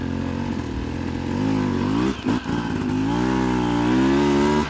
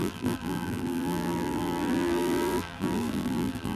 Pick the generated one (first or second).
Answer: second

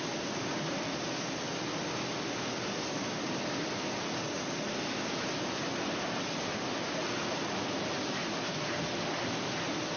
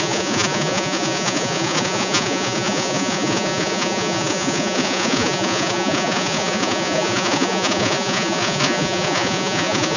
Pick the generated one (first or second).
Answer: second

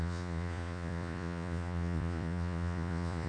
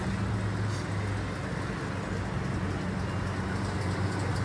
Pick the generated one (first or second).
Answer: first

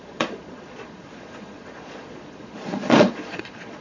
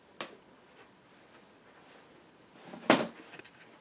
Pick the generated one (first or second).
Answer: first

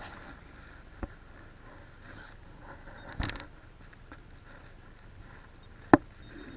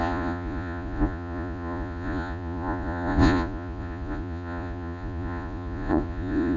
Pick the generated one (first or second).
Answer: second